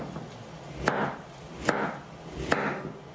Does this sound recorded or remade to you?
recorded